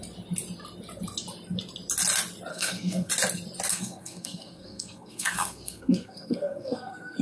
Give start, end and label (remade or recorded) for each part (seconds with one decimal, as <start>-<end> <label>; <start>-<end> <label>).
0.0-2.5 recorded; 2.5-3.1 remade; 3.1-3.7 recorded; 3.7-7.2 remade